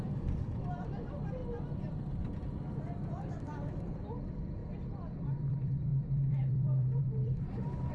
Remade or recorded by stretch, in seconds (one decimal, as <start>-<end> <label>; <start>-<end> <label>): 0.0-1.4 remade; 1.4-3.8 recorded; 3.8-4.6 remade; 4.6-5.4 recorded; 5.4-7.9 remade